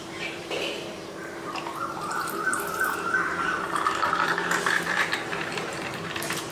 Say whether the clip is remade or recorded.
remade